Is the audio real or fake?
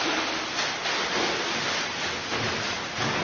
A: real